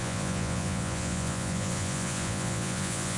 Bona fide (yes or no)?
no